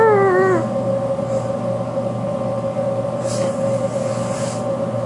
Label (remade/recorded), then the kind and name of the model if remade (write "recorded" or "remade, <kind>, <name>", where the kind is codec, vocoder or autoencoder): recorded